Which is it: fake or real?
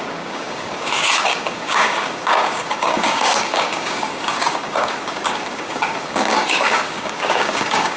fake